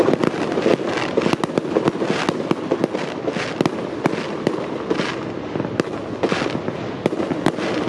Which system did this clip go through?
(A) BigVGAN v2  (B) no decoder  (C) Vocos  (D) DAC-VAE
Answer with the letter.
B